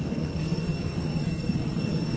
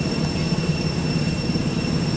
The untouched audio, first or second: second